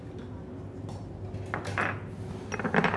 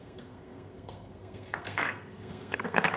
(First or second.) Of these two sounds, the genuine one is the first